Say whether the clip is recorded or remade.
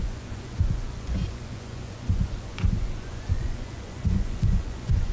remade